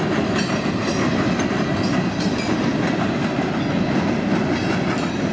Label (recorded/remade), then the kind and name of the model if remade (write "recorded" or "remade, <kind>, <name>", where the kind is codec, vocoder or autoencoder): recorded